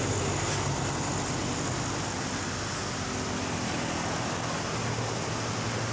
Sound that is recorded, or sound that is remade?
recorded